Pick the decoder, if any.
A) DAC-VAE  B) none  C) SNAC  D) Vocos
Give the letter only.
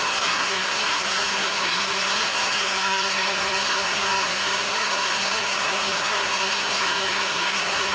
C